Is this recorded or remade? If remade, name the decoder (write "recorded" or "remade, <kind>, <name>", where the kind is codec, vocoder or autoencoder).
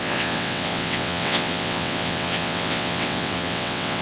remade, vocoder, WaveNeXt